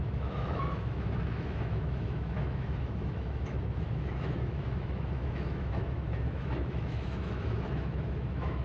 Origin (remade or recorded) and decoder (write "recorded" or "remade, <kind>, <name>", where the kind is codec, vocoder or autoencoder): remade, autoencoder, DAC-VAE